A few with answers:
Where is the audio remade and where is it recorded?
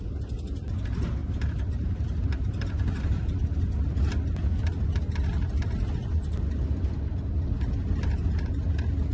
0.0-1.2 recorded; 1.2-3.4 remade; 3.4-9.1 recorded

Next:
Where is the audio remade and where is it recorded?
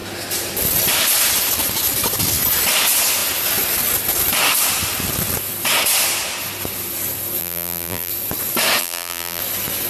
0.0-7.4 recorded; 7.4-8.1 remade; 8.1-8.8 recorded; 8.8-9.4 remade; 9.4-9.9 recorded